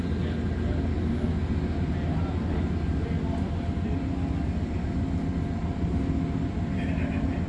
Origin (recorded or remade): recorded